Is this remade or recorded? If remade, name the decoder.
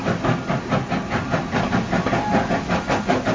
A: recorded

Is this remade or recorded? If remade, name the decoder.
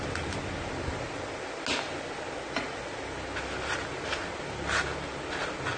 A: recorded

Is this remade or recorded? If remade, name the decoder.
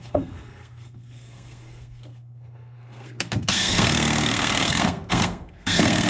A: remade, codec, SNAC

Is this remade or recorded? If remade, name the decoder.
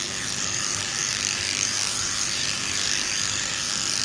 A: remade, codec, DAC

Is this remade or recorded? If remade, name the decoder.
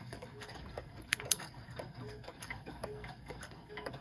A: remade, codec, SNAC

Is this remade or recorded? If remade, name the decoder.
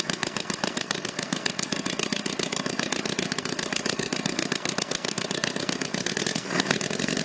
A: remade, codec, SNAC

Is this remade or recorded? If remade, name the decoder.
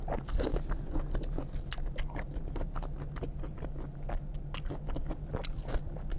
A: recorded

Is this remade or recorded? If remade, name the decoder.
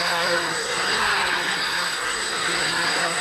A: remade, codec, SNAC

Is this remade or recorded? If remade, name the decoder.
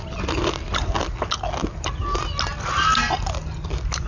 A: recorded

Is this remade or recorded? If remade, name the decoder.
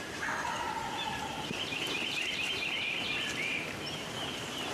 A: remade, vocoder, BigVGAN v2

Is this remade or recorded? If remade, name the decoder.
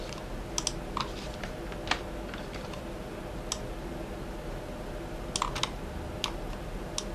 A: recorded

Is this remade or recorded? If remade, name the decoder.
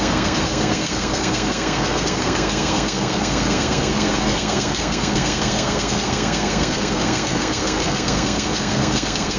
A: remade, codec, SNAC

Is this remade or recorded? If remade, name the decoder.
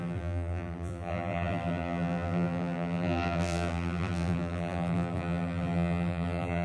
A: remade, vocoder, BigVGAN v2